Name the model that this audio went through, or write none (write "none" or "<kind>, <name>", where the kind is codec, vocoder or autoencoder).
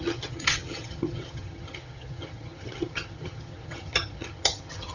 vocoder, HiFi-GAN